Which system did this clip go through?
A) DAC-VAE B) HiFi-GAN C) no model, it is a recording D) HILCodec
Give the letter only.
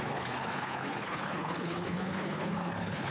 D